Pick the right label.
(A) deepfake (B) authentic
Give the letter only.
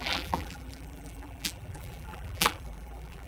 A